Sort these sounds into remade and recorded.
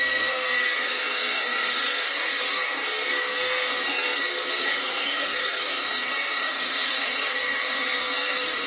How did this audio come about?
remade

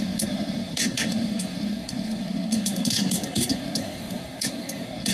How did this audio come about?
remade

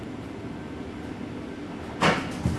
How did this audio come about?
recorded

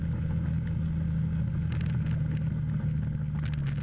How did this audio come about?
recorded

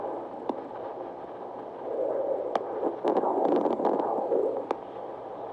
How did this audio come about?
recorded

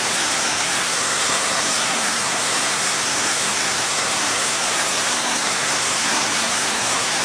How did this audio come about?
remade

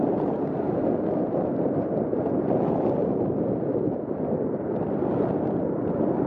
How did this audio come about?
recorded